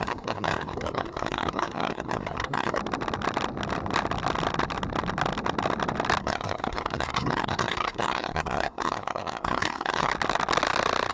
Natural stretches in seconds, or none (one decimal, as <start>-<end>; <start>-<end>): 2.8-6.2; 10.1-11.1